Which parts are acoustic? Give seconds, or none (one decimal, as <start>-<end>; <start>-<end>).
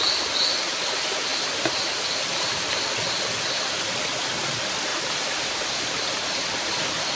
0.0-7.2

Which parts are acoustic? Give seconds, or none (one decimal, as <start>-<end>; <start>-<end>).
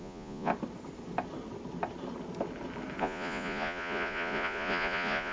0.5-3.0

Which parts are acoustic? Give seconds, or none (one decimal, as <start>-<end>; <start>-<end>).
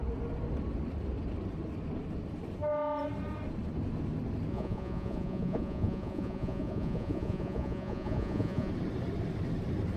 0.0-4.5; 8.7-10.0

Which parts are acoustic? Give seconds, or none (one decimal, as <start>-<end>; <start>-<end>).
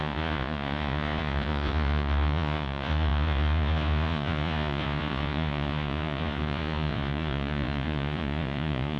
none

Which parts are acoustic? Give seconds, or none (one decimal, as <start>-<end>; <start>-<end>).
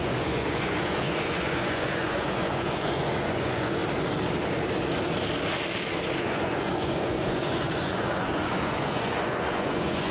3.8-6.2